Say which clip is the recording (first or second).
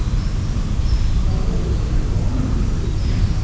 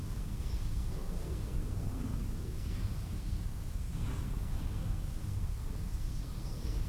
first